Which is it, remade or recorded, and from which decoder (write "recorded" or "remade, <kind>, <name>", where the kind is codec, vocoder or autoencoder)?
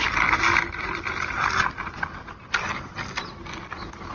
recorded